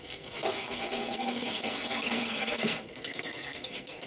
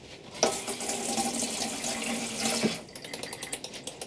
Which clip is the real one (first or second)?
second